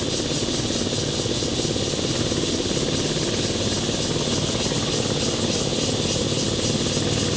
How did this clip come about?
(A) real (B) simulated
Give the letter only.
A